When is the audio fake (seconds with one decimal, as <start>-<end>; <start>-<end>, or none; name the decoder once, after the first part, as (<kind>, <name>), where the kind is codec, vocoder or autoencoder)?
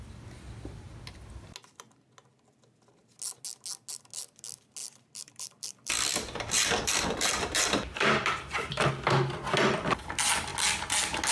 4.8-8.9 (vocoder, BigVGAN v2)